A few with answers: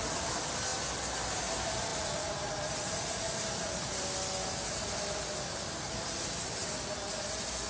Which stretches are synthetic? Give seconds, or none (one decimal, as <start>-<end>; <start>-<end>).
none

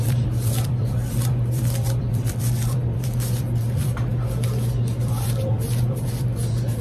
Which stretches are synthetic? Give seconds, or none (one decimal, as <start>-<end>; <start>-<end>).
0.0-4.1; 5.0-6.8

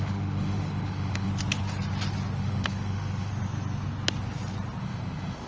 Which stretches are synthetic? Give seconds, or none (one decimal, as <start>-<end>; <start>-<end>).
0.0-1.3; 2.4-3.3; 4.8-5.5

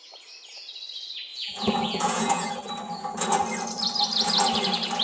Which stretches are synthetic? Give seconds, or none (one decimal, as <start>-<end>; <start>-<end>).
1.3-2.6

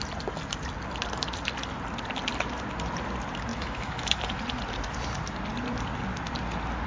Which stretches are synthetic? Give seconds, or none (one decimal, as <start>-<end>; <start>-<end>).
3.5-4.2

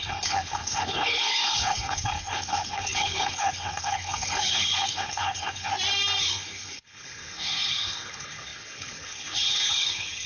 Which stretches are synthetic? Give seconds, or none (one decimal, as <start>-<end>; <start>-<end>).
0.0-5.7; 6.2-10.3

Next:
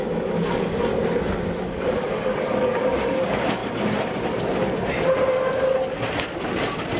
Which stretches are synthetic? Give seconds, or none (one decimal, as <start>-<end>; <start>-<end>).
0.0-0.9; 1.6-3.6